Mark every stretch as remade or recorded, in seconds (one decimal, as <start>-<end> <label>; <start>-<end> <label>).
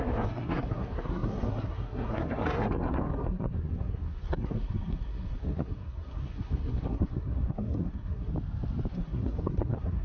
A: 0.0-8.3 remade; 8.3-8.9 recorded; 8.9-10.0 remade